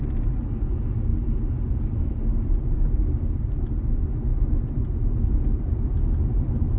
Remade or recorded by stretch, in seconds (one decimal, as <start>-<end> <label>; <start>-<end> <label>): 0.0-6.8 recorded

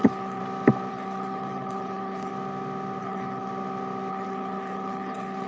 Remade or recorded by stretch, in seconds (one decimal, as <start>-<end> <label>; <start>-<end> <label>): 0.0-0.4 remade; 0.4-0.9 recorded; 0.9-2.3 remade; 2.3-3.0 recorded; 3.0-3.5 remade; 3.5-4.1 recorded; 4.1-5.5 remade

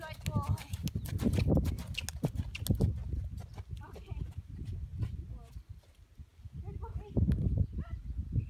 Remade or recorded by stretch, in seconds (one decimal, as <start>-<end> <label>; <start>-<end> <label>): 0.0-8.5 recorded

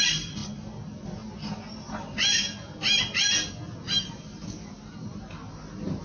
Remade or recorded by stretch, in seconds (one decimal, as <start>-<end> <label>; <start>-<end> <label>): 0.0-0.4 remade; 0.4-4.0 recorded; 4.0-5.4 remade; 5.4-6.0 recorded

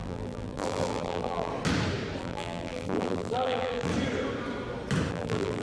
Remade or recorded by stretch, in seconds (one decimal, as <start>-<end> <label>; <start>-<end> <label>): 0.0-1.5 remade; 1.5-2.2 recorded; 2.2-3.9 remade; 3.9-5.1 recorded; 5.1-5.6 remade

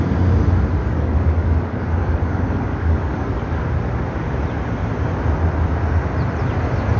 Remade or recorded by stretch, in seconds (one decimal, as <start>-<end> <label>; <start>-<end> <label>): 0.0-0.8 recorded; 0.8-3.6 remade; 3.6-7.0 recorded

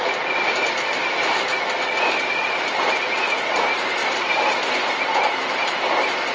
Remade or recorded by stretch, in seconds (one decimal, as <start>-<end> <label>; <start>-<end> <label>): 0.0-6.3 recorded

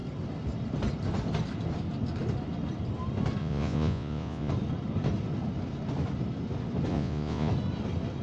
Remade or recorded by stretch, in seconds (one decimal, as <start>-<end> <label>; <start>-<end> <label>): 0.0-3.4 recorded; 3.4-4.5 remade; 4.5-6.9 recorded; 6.9-7.5 remade; 7.5-8.2 recorded